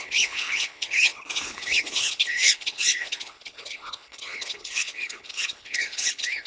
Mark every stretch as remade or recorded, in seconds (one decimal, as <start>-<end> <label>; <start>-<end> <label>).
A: 0.0-6.5 remade